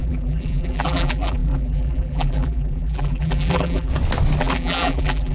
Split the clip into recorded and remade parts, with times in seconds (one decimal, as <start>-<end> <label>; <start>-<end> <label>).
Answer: 0.0-3.9 remade; 3.9-4.4 recorded; 4.4-5.3 remade

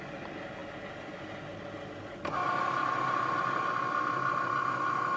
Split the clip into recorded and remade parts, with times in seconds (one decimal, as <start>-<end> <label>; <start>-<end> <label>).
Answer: 0.0-5.2 recorded

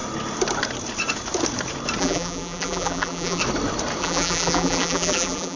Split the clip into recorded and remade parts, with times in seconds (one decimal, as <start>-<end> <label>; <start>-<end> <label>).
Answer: 0.0-2.0 recorded; 2.0-3.4 remade; 3.4-4.0 recorded; 4.0-5.6 remade

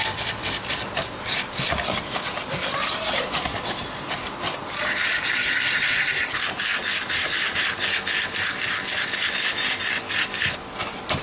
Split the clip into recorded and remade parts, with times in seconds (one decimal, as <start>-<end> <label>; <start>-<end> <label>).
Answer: 0.0-11.2 recorded

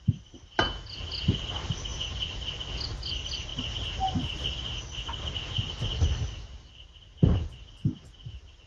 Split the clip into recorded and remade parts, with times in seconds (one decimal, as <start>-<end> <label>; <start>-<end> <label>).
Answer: 0.0-1.9 recorded; 1.9-2.5 remade; 2.5-8.7 recorded

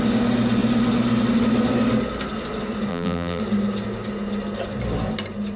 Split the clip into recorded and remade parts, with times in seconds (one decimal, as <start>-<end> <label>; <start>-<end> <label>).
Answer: 0.0-2.9 recorded; 2.9-3.4 remade; 3.4-5.6 recorded